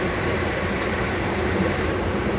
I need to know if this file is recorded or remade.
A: remade